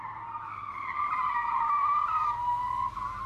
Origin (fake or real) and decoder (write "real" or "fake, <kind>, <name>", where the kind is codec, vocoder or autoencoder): real